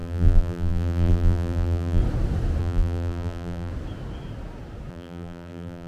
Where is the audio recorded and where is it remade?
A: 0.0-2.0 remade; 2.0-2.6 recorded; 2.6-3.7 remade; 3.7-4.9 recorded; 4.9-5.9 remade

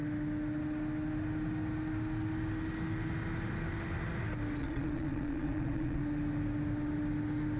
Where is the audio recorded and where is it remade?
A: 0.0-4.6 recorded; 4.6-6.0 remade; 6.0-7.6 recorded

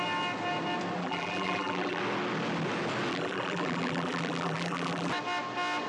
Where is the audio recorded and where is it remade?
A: 0.0-1.0 recorded; 1.0-2.0 remade; 2.0-3.1 recorded; 3.1-5.1 remade; 5.1-5.9 recorded

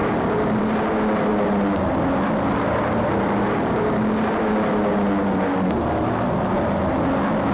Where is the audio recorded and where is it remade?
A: 0.0-0.6 remade; 0.6-1.3 recorded; 1.3-4.5 remade; 4.5-7.5 recorded

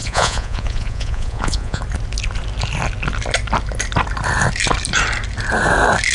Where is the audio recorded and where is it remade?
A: 0.0-1.8 remade; 1.8-6.1 recorded